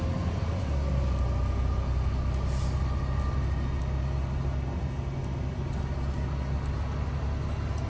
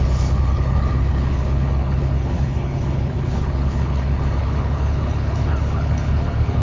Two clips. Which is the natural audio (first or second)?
first